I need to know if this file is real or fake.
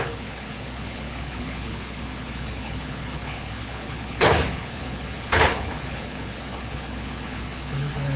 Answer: fake